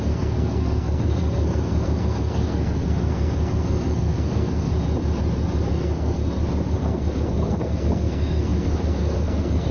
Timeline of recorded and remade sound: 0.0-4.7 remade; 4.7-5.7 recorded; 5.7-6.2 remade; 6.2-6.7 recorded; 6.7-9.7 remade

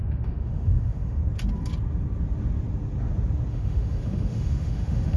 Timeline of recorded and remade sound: 0.0-1.2 remade; 1.2-3.5 recorded; 3.5-5.2 remade